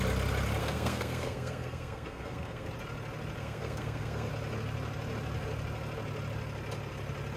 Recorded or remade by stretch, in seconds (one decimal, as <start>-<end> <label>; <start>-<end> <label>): 0.0-0.6 recorded; 0.6-2.7 remade; 2.7-3.4 recorded; 3.4-4.3 remade; 4.3-7.4 recorded